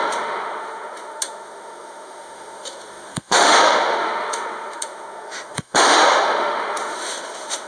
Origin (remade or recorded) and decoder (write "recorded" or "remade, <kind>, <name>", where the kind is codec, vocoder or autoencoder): remade, autoencoder, DAC-VAE